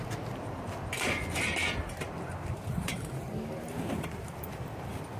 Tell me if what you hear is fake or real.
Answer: fake